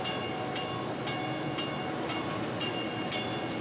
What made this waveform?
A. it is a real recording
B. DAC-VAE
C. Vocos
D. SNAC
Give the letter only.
A